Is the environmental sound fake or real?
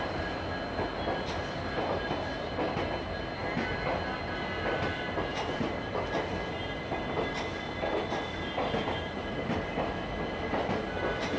real